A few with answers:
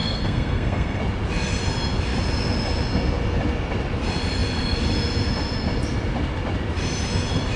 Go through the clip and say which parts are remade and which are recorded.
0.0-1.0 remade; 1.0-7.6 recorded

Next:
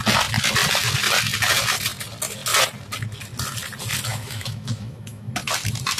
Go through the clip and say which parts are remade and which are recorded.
0.0-4.1 recorded; 4.1-5.3 remade; 5.3-6.0 recorded

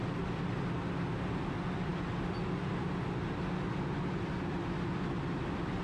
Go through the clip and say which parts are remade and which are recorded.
0.0-5.8 recorded

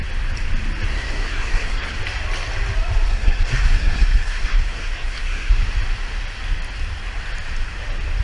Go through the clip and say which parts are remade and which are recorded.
0.0-0.9 recorded; 0.9-2.0 remade; 2.0-3.1 recorded; 3.1-5.5 remade; 5.5-8.2 recorded

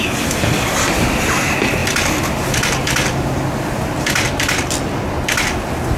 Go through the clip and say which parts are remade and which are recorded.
0.0-6.0 recorded

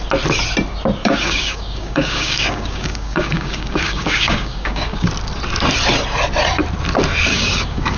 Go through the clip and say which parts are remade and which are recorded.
0.0-1.0 recorded; 1.0-5.1 remade; 5.1-7.3 recorded; 7.3-8.0 remade